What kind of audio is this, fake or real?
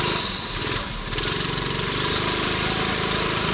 real